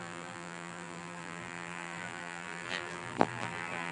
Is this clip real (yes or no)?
no